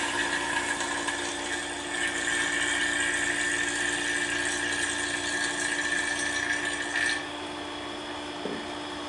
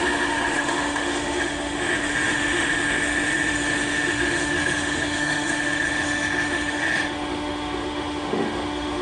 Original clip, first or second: first